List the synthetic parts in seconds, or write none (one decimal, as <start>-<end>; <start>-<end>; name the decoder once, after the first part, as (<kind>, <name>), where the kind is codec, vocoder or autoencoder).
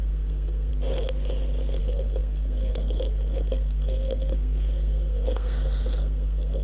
0.0-0.7 (codec, SNAC); 1.8-6.6